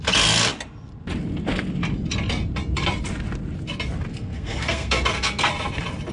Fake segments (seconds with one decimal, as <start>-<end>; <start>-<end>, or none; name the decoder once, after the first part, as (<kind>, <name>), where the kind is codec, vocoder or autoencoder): 4.1-5.5 (codec, SNAC)